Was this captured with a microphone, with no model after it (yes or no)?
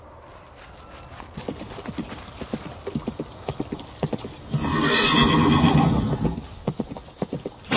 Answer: yes